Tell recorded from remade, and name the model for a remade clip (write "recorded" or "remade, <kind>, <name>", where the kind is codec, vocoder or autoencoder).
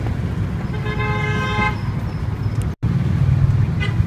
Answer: recorded